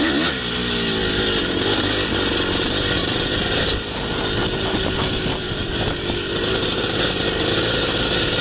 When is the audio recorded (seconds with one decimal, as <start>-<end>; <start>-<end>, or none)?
0.0-4.4; 5.7-8.4